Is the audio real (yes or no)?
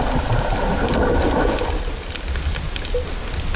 yes